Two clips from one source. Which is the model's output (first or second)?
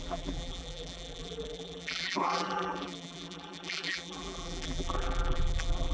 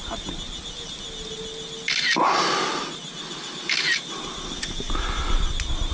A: first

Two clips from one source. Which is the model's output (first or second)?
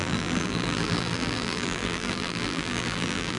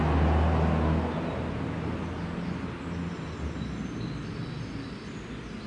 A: first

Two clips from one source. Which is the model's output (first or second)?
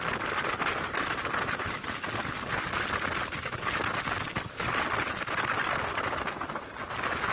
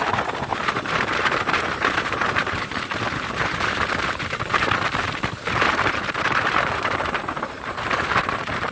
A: second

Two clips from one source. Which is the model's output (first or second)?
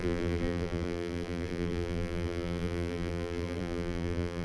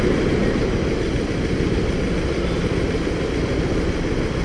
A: first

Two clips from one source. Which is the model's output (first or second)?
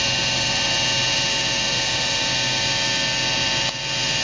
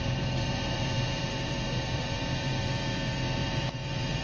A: second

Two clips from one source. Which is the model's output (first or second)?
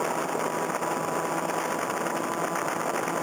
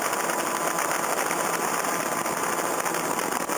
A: second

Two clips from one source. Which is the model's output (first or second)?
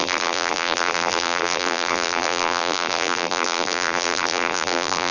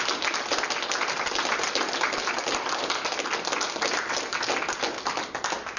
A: first